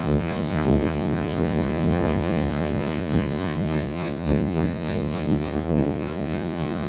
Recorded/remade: remade